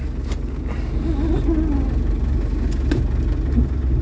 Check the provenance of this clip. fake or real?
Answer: real